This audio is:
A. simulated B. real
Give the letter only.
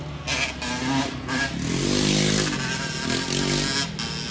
B